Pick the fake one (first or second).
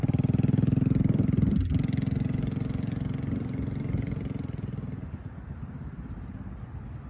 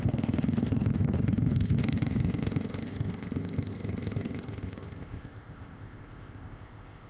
second